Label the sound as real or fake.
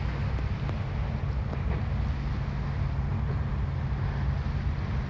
real